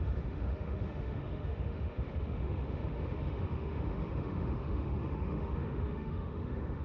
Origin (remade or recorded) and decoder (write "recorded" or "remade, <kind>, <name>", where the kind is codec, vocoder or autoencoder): remade, autoencoder, DAC-VAE